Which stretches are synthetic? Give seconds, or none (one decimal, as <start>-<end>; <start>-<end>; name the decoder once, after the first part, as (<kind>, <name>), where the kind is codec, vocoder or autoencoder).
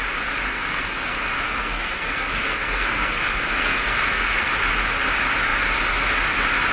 0.5-4.5 (codec, SNAC)